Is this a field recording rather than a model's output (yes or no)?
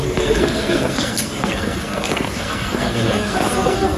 no